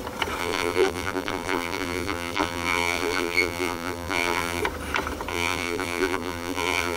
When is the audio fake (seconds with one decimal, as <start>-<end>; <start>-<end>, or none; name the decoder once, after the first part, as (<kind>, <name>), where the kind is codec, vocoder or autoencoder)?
0.4-4.6 (vocoder, BigVGAN v2); 5.3-7.0